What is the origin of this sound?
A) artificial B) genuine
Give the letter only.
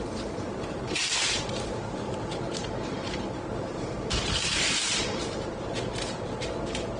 A